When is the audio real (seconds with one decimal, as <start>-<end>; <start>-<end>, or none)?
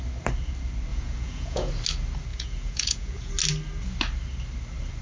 0.0-0.9; 1.7-2.3; 3.3-5.0